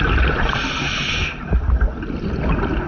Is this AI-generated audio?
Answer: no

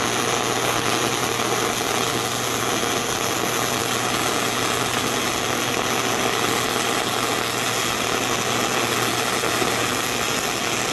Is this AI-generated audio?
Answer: no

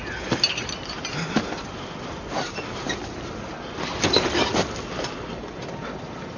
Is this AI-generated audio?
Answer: no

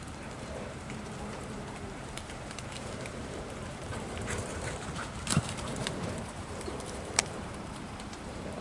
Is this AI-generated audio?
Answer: yes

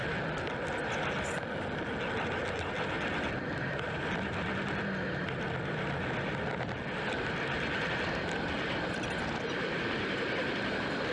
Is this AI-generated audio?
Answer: no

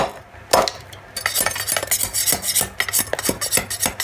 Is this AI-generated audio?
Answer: no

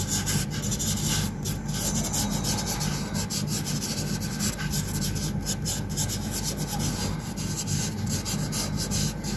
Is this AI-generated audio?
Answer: no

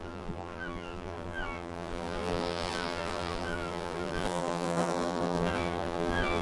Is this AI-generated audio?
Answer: yes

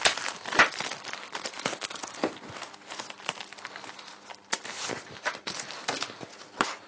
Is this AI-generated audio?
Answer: no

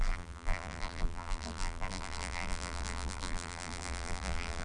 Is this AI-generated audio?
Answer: yes